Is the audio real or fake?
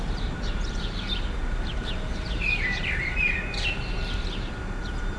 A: fake